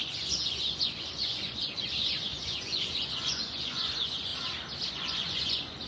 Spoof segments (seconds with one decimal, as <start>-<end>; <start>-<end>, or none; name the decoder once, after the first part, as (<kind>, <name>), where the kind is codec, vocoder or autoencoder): 0.0-4.3 (vocoder, Vocos); 4.9-5.9